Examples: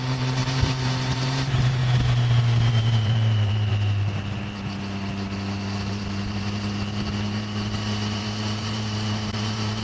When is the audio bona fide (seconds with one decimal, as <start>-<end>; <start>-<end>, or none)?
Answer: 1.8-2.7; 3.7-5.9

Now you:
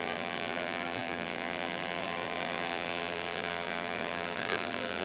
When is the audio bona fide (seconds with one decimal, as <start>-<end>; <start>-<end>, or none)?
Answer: none

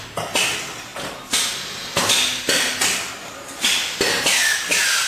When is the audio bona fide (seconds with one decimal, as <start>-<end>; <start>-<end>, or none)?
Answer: 0.0-5.1

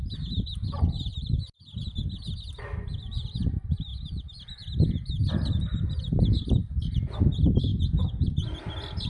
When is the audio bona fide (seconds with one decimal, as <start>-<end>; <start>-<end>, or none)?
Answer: 2.0-2.6; 7.7-9.1